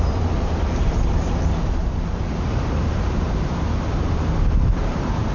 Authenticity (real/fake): fake